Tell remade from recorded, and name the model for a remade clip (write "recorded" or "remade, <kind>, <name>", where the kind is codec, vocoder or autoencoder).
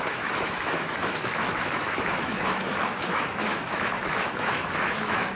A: remade, autoencoder, DAC-VAE